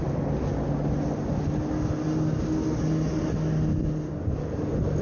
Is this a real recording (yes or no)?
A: yes